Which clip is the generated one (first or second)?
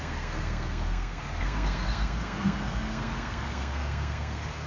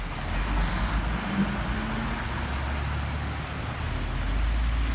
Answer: first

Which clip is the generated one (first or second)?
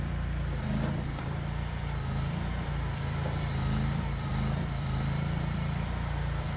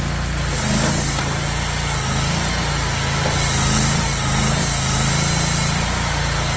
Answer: first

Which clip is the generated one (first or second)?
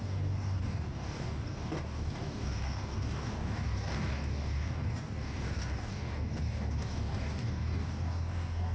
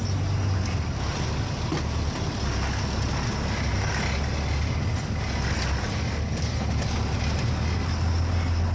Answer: first